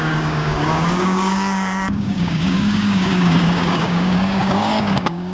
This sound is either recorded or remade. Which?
remade